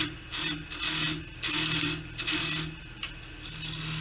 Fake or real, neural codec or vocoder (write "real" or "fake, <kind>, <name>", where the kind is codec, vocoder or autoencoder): real